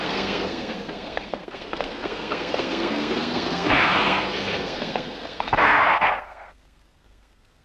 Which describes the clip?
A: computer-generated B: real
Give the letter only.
A